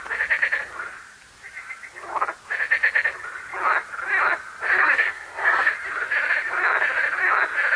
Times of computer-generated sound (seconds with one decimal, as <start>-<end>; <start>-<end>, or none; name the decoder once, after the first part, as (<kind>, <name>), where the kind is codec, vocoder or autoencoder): 4.8-5.7 (codec, SNAC)